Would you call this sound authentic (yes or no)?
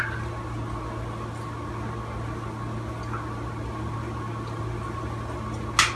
yes